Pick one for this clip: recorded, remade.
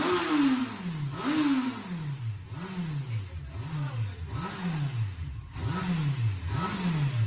recorded